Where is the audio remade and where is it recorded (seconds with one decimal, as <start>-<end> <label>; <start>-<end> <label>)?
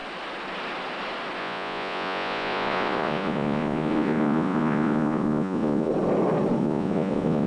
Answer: 0.0-1.4 recorded; 1.4-5.9 remade; 5.9-6.6 recorded; 6.6-7.5 remade